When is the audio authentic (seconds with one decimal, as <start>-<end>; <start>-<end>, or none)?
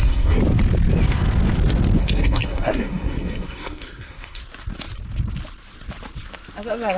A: 0.4-2.0; 4.4-7.0